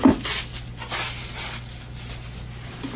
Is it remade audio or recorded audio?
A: recorded